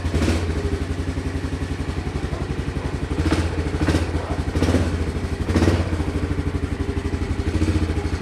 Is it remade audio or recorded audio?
recorded